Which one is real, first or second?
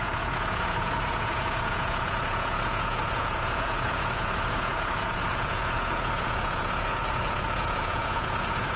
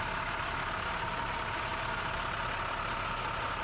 second